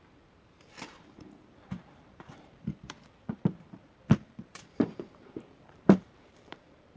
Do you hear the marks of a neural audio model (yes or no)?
yes